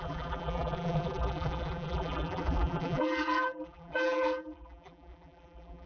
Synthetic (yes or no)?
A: yes